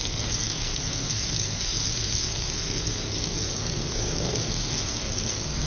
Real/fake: fake